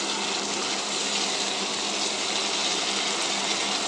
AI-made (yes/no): no